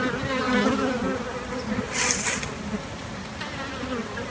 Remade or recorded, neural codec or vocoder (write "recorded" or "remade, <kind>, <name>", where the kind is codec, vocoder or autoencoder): recorded